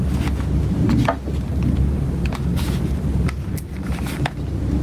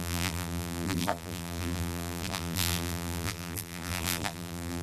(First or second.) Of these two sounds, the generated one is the second